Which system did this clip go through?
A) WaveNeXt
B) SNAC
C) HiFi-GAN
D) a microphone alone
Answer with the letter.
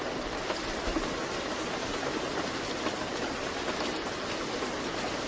D